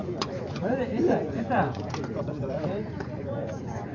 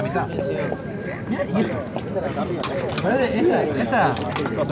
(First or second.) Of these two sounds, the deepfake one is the first